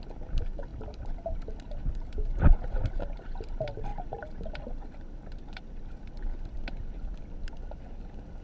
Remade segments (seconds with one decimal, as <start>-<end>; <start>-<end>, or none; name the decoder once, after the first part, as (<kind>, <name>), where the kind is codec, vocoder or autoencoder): 0.7-1.8 (vocoder, BigVGAN v2)